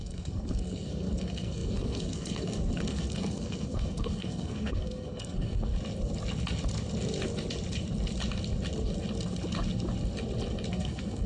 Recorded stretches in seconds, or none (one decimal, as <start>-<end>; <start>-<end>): 5.7-10.7